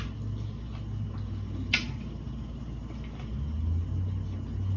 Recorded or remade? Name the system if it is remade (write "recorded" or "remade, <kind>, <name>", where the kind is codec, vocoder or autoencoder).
recorded